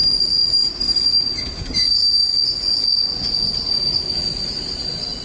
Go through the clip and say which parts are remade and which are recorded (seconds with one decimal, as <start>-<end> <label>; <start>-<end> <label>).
0.0-2.3 recorded; 2.3-3.5 remade; 3.5-5.2 recorded